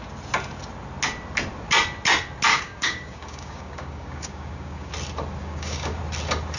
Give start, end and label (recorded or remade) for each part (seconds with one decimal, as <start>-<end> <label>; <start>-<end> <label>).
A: 0.0-2.5 recorded; 2.5-4.9 remade; 4.9-5.4 recorded; 5.4-6.0 remade; 6.0-6.6 recorded